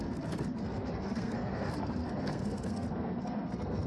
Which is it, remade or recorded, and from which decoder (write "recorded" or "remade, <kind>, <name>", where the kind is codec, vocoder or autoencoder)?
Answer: remade, codec, SNAC